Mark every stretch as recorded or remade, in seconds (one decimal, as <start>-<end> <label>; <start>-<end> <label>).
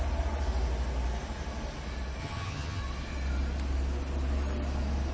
0.0-2.2 recorded; 2.2-2.8 remade; 2.8-5.1 recorded